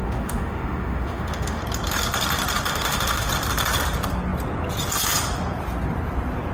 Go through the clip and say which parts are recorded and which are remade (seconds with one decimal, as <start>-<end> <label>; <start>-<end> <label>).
0.0-1.6 remade; 1.6-2.7 recorded; 2.7-3.3 remade; 3.3-6.5 recorded